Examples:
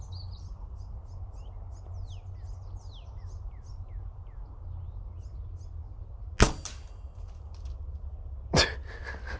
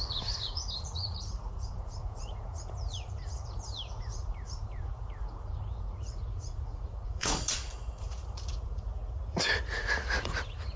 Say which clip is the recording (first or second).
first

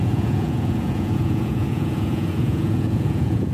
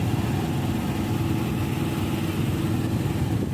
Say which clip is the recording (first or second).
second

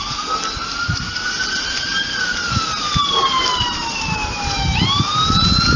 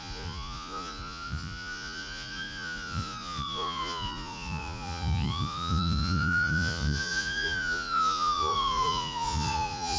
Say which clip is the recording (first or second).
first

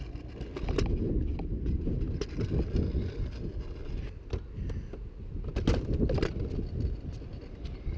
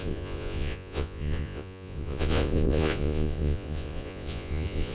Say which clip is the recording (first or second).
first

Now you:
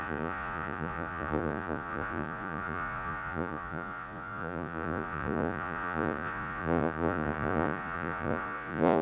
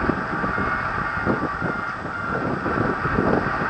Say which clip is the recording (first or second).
second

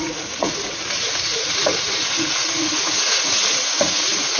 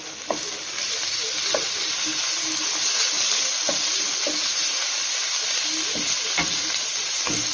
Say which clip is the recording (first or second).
second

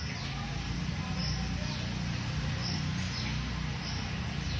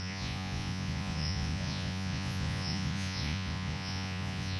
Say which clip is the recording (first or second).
first